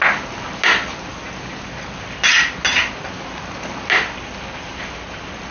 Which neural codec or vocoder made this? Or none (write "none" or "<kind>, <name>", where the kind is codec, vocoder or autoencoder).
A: none